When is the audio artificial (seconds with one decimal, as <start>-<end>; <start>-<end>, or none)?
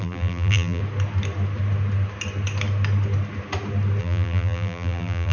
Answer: 0.0-0.8; 4.0-5.3